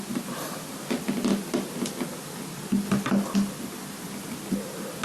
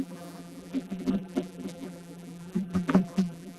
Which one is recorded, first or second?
first